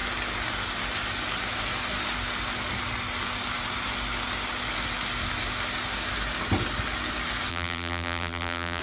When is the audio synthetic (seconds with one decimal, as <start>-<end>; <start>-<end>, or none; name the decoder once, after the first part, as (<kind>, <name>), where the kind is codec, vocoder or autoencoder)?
7.5-8.8 (vocoder, BigVGAN v2)